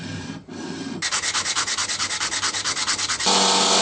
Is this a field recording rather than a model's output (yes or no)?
yes